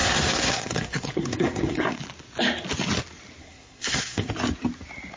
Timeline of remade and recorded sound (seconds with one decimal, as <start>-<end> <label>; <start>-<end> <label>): 0.0-2.0 remade; 2.0-3.4 recorded; 3.4-4.3 remade; 4.3-5.2 recorded